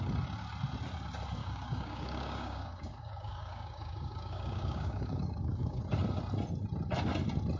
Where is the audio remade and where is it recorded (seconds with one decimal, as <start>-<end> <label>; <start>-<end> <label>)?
0.0-1.4 recorded; 1.4-5.8 remade; 5.8-7.6 recorded